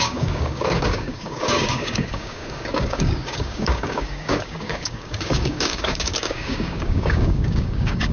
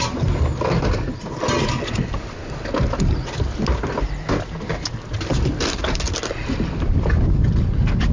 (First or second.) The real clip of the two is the second